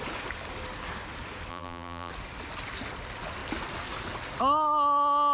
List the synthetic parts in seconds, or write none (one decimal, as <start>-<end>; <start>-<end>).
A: 1.5-2.1